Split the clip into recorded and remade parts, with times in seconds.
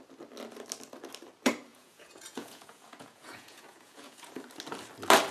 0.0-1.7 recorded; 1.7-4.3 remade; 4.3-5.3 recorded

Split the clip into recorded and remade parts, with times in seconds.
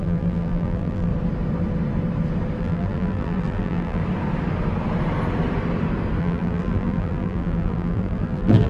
0.0-1.1 remade; 1.1-2.6 recorded; 2.6-4.0 remade; 4.0-6.2 recorded; 6.2-8.7 remade